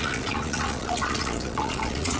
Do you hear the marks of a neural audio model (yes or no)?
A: yes